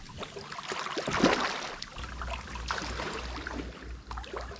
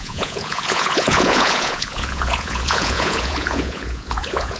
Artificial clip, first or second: second